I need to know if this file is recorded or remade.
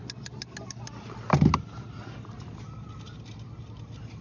recorded